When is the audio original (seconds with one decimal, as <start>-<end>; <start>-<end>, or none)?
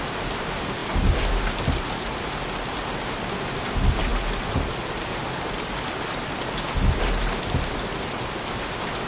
0.0-9.1